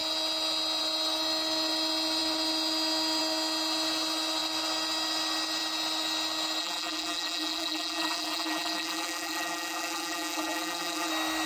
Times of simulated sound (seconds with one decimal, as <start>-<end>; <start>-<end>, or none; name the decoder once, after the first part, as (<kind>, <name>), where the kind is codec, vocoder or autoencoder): 6.6-11.1 (vocoder, BigVGAN v2)

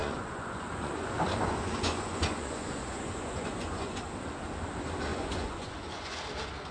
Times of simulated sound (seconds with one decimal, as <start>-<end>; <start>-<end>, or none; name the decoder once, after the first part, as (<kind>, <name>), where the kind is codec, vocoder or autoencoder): 0.0-4.0 (vocoder, Vocos); 5.1-6.2

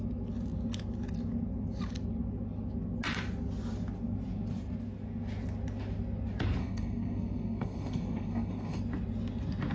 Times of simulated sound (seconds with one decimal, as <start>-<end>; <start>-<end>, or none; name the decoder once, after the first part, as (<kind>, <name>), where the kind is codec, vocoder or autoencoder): 6.6-8.8 (codec, SNAC)

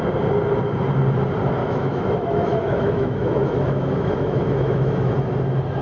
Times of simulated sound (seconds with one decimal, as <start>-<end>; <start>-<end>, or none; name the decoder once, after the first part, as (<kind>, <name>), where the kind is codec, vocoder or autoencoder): 1.6-5.1 (autoencoder, DAC-VAE)

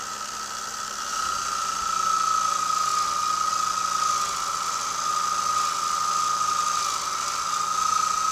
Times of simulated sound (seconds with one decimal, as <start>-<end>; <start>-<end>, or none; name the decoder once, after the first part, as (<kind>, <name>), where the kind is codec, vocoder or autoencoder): none

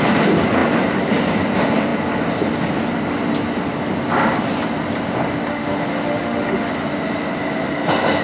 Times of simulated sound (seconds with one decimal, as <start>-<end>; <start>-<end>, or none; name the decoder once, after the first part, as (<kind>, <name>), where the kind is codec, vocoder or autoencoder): 5.5-6.7 (autoencoder, DAC-VAE)

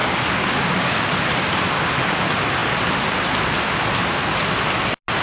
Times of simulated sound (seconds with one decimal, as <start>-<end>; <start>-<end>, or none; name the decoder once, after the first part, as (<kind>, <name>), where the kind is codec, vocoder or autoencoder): 0.0-1.1 (codec, DAC)

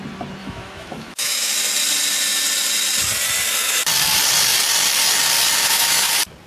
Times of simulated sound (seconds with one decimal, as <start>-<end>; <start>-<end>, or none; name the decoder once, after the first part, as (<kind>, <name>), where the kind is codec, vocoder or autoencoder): 0.4-1.5 (autoencoder, DAC-VAE); 5.6-6.1